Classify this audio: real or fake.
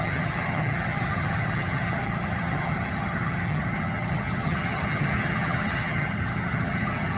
fake